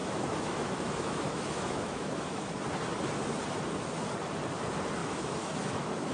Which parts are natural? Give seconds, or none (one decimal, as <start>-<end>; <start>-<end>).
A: 2.5-5.0